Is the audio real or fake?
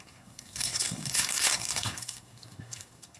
fake